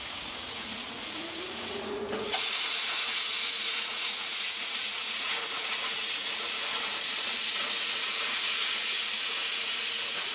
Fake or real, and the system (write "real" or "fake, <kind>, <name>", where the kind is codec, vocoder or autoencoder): fake, vocoder, Vocos